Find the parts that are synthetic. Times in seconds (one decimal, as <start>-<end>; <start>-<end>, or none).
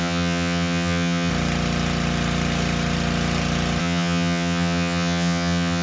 0.0-1.3; 3.8-5.8